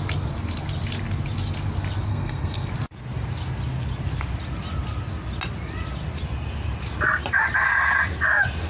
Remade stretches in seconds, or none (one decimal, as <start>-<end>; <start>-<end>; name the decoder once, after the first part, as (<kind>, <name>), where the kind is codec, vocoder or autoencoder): 2.1-2.7 (codec, SNAC)